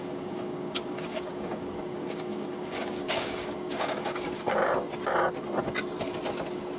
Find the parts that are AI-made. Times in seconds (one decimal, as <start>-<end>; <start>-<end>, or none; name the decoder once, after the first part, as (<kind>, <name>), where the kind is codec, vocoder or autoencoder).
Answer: 0.0-4.6 (codec, DAC)